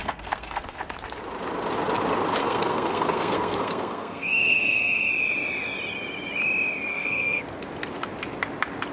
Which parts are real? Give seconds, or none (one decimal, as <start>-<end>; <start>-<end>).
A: 0.8-2.4; 5.1-6.9; 7.4-8.9